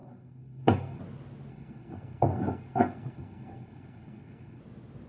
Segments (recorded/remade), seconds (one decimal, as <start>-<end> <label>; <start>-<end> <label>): 0.0-1.0 remade; 1.0-1.5 recorded; 1.5-4.6 remade; 4.6-5.1 recorded